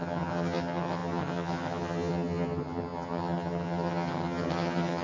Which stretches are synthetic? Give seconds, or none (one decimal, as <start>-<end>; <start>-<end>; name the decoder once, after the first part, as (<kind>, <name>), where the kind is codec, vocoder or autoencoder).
0.0-5.0 (vocoder, HiFi-GAN)